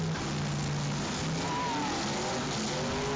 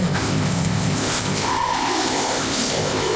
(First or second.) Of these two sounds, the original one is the first